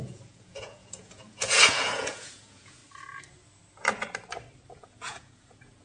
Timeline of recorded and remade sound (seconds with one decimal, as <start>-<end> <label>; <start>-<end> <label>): 0.0-2.8 remade; 2.8-4.7 recorded; 4.7-5.8 remade